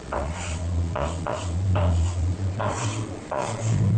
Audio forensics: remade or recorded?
remade